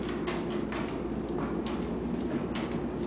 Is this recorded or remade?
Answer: recorded